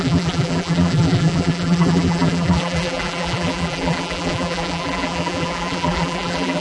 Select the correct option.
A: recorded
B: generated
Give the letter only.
B